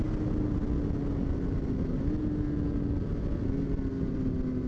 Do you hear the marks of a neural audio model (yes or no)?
no